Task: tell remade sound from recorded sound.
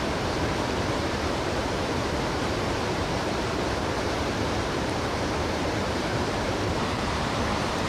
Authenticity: remade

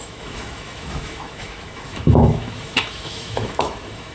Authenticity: remade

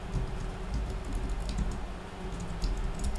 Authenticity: recorded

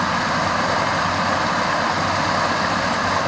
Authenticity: recorded